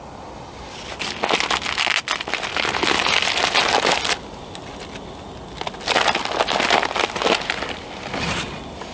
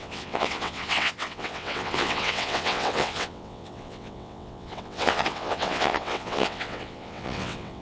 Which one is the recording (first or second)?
first